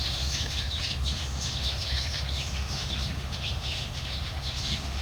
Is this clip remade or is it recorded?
remade